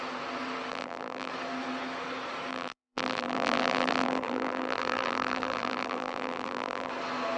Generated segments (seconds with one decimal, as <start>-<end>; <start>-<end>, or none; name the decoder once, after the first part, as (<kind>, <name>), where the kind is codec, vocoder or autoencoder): 0.7-1.3 (vocoder, BigVGAN v2); 2.5-6.9